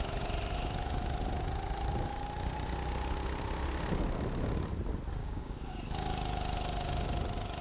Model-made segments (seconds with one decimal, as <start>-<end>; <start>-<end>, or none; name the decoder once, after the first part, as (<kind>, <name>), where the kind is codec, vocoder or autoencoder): 5.2-5.8 (codec, DAC)